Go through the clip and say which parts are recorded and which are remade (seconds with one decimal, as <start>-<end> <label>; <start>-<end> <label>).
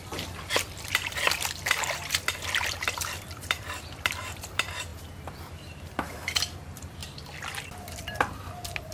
0.0-7.0 remade; 7.0-8.9 recorded